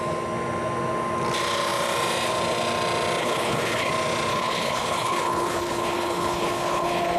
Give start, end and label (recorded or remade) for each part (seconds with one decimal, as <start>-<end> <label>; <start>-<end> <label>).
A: 0.0-3.2 recorded; 3.2-3.9 remade; 3.9-4.3 recorded; 4.3-7.2 remade